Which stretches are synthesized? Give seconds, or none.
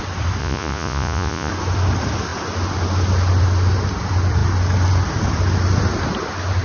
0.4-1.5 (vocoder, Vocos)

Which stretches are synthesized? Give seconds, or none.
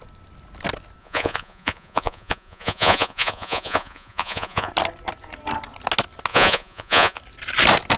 1.0-4.7 (vocoder, Vocos); 6.3-7.2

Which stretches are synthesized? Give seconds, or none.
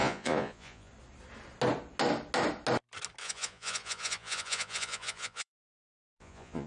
0.0-0.9 (vocoder, Vocos); 3.2-6.7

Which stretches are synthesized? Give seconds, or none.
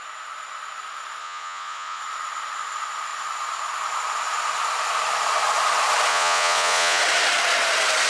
1.2-2.0 (vocoder, Vocos); 6.1-7.0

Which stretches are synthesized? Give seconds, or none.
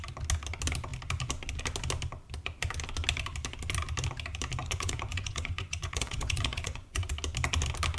4.6-7.1 (vocoder, Vocos)